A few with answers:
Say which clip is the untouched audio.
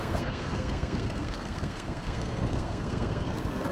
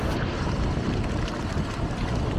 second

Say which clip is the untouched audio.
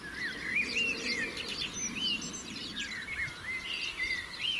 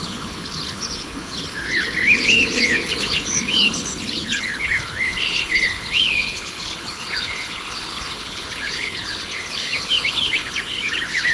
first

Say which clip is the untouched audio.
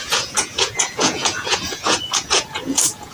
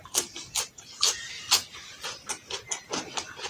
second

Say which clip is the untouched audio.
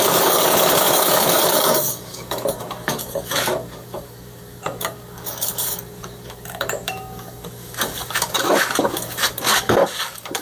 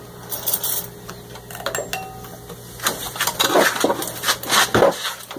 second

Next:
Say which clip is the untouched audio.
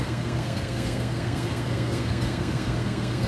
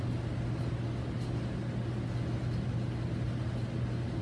second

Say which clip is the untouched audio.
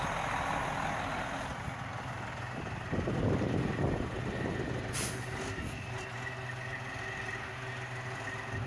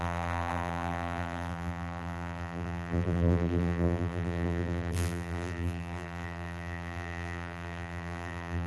first